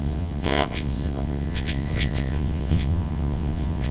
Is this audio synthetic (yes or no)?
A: yes